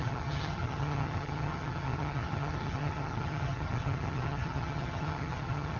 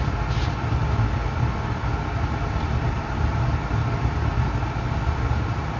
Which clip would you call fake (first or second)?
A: first